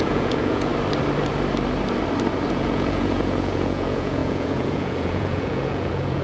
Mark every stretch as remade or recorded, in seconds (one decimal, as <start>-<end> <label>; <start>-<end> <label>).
0.0-0.7 remade; 0.7-2.5 recorded; 2.5-6.2 remade